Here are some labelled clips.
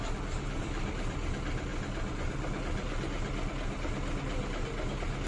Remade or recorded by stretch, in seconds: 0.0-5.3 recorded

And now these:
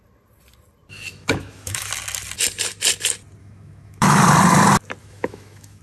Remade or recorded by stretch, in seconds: 0.0-1.1 recorded; 1.1-1.9 remade; 1.9-3.4 recorded; 3.4-4.2 remade; 4.2-5.0 recorded; 5.0-5.8 remade

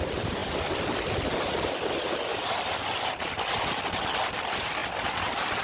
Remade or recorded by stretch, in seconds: 0.0-0.4 recorded; 0.4-1.7 remade; 1.7-2.3 recorded; 2.3-2.8 remade; 2.8-5.6 recorded

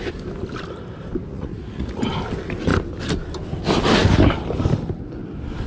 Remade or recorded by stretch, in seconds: 0.0-1.3 recorded; 1.3-2.0 remade; 2.0-5.7 recorded

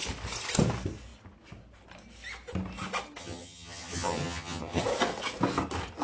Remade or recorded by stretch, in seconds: 0.0-3.2 recorded; 3.2-4.8 remade; 4.8-6.0 recorded